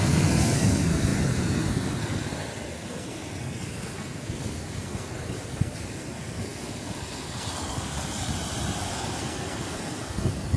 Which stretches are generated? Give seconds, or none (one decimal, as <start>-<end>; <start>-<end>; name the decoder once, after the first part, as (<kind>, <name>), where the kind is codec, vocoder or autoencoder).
0.0-8.3 (codec, SNAC); 8.9-10.6